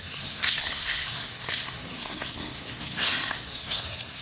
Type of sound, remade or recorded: remade